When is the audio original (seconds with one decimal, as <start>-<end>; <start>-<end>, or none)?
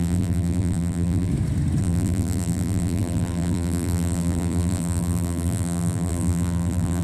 1.3-1.8